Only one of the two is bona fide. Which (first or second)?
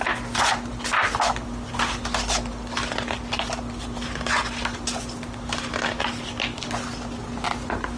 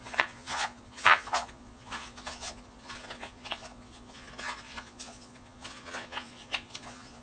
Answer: first